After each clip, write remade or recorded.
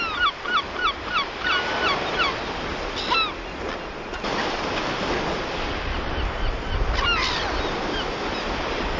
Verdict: recorded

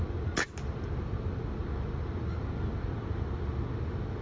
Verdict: recorded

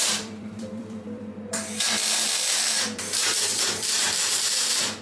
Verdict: remade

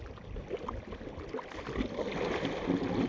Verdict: recorded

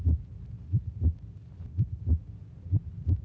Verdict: recorded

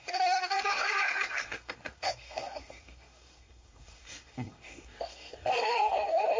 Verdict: remade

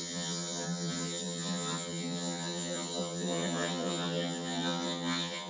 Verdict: remade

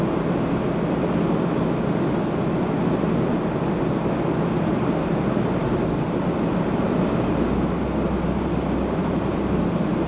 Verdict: recorded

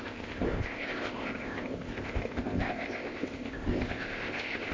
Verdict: remade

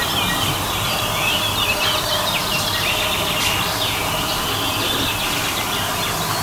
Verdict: recorded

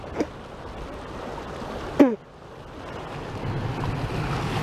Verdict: recorded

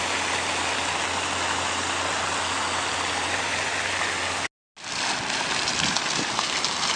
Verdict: recorded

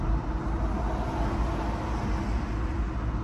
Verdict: recorded